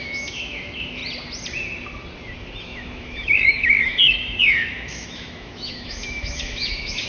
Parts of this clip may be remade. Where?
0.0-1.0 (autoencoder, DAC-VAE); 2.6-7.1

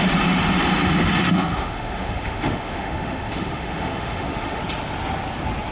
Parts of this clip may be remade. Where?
1.2-4.6 (autoencoder, DAC-VAE)

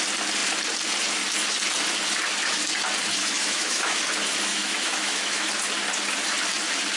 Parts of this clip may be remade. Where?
3.2-4.0 (autoencoder, DAC-VAE); 4.5-5.5